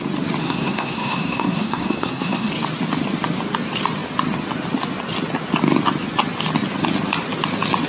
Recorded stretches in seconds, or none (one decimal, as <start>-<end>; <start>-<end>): 0.0-0.4; 2.5-7.9